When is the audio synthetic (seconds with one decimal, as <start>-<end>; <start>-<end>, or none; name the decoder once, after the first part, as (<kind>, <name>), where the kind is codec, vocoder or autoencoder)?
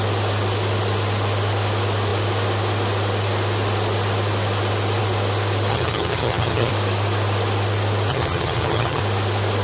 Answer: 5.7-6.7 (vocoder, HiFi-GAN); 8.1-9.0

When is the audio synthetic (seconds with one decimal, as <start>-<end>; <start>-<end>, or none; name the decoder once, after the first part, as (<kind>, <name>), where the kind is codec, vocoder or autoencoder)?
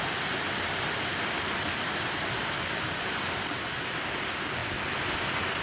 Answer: 0.0-4.6 (vocoder, BigVGAN v2)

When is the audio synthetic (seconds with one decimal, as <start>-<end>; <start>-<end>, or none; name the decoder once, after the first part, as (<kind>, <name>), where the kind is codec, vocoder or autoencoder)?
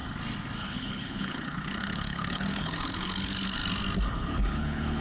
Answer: 0.6-3.6 (codec, HILCodec); 4.1-5.0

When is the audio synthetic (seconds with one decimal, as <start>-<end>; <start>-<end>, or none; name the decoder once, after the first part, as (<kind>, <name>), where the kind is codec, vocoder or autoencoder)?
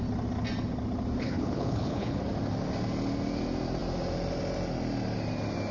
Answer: 1.2-2.2 (codec, HILCodec)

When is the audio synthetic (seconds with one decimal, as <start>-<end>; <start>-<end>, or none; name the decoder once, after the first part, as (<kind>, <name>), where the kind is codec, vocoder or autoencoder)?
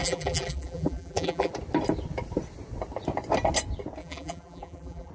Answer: 0.0-1.5 (vocoder, BigVGAN v2); 4.0-5.1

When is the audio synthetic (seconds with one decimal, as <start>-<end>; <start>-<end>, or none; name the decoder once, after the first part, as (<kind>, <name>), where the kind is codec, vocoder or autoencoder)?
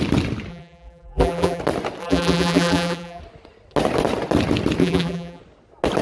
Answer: 0.5-1.6 (vocoder, BigVGAN v2); 2.0-3.2; 4.8-5.4